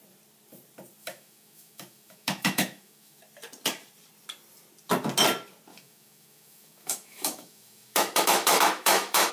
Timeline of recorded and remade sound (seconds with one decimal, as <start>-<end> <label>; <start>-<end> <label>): 0.0-1.0 recorded; 1.0-3.2 remade; 3.2-5.7 recorded; 5.7-9.3 remade

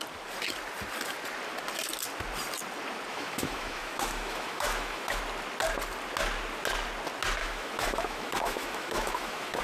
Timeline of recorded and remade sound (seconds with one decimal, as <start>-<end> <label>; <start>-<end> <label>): 0.0-3.1 recorded; 3.1-5.2 remade; 5.2-7.4 recorded; 7.4-9.6 remade

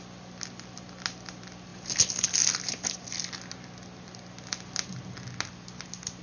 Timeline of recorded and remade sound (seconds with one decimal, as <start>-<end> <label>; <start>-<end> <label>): 0.0-6.2 recorded

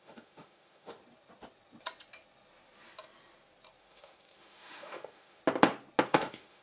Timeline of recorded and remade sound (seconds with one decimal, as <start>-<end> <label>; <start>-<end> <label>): 0.0-1.0 remade; 1.0-3.8 recorded; 3.8-5.4 remade; 5.4-6.1 recorded; 6.1-6.6 remade

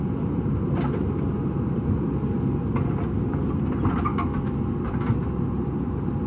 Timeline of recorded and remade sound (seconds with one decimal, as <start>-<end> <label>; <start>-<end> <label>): 0.0-4.1 recorded; 4.1-4.6 remade; 4.6-6.3 recorded

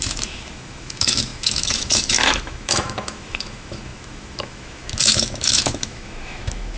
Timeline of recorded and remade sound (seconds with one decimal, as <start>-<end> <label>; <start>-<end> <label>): 0.0-6.8 remade